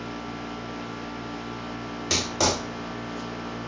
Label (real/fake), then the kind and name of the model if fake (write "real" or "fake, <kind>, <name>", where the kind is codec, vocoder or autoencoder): real